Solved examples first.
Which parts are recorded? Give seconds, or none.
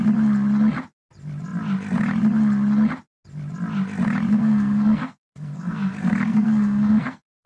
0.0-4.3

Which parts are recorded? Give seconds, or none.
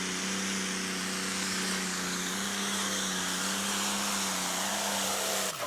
0.0-1.3; 3.7-4.7; 5.3-5.7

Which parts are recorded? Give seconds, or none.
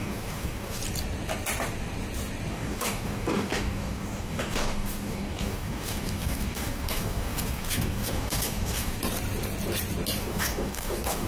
0.8-2.5; 9.0-10.2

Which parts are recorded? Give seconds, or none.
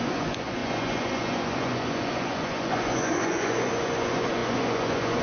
none